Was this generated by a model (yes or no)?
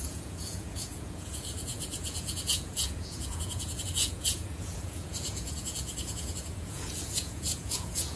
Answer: yes